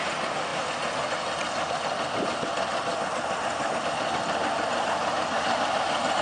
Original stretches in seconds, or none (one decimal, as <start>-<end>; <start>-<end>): 0.0-6.2

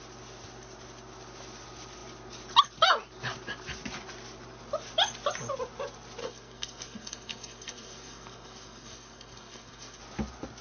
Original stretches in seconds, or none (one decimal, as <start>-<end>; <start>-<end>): 0.0-6.2; 10.0-10.6

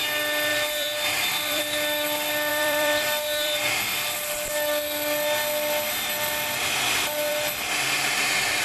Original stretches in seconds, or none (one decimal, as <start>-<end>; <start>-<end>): 0.0-0.5; 1.6-2.5; 4.5-8.6

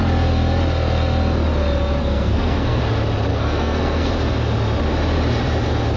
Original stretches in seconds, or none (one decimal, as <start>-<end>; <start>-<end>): 0.0-2.0; 2.8-3.3; 4.1-6.0

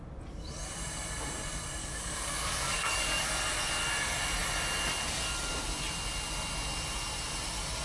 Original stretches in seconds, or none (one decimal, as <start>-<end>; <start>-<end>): 0.0-1.8; 3.3-7.8

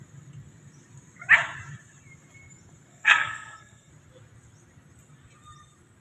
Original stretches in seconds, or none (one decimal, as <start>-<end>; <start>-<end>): 0.0-2.9; 3.9-6.0